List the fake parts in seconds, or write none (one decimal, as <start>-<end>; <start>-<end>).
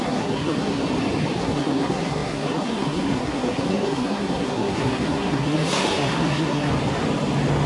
0.0-0.8; 1.4-6.7